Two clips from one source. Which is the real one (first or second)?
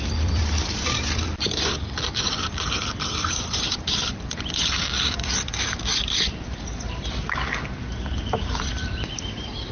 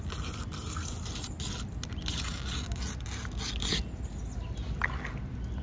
second